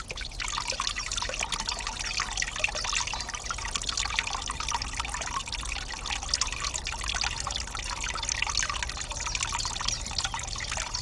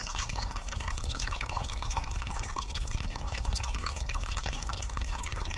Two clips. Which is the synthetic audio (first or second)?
second